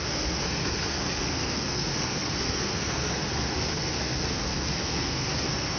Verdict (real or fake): fake